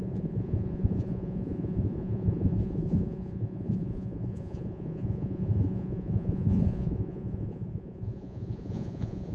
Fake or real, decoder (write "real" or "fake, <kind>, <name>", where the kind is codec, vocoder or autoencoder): fake, vocoder, Vocos